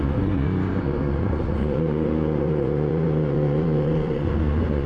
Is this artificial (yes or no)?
yes